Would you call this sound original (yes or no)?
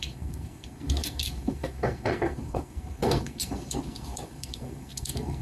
no